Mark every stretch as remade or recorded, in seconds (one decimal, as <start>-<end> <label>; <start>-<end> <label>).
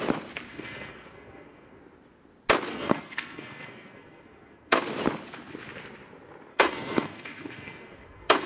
0.0-0.5 recorded; 0.5-1.8 remade; 1.8-2.7 recorded; 2.7-4.8 remade; 4.8-6.5 recorded; 6.5-8.5 remade